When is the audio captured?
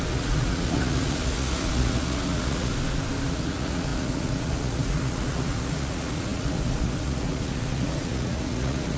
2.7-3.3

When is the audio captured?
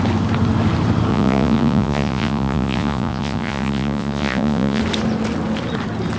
0.0-1.1; 4.8-6.2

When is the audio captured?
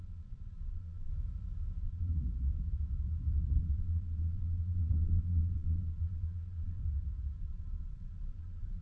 1.1-1.8; 2.2-3.6; 6.8-7.4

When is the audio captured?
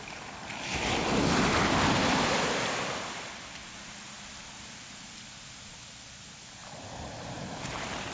0.0-8.1